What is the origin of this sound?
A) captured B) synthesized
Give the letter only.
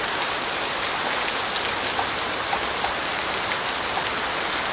A